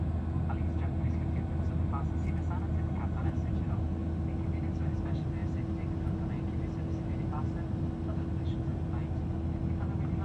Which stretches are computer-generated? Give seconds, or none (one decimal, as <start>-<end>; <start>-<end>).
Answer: 3.2-3.8